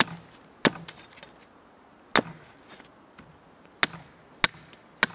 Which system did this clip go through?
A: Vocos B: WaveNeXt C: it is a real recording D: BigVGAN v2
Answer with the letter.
C